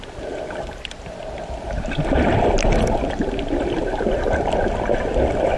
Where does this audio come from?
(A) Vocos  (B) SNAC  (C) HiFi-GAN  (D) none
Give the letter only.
D